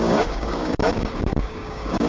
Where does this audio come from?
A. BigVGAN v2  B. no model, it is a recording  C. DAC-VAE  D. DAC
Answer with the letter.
D